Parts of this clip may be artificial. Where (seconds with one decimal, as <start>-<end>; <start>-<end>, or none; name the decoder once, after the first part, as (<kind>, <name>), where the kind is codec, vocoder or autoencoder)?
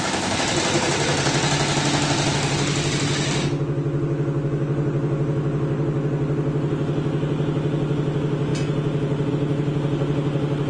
none